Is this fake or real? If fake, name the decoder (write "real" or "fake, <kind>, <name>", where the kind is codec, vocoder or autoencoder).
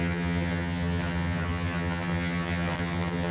fake, vocoder, HiFi-GAN